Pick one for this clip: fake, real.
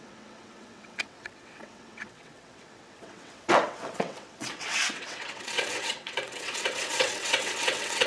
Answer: fake